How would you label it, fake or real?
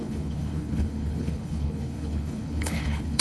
fake